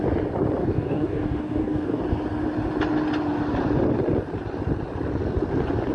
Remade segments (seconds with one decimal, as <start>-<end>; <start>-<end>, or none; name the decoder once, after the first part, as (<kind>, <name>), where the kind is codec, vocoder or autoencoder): 0.6-2.0 (codec, DAC)